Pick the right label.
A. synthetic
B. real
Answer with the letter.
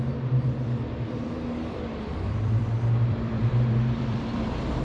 A